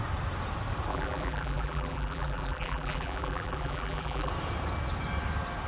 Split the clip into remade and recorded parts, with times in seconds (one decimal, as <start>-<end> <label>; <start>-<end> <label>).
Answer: 0.0-0.9 recorded; 0.9-4.3 remade; 4.3-5.7 recorded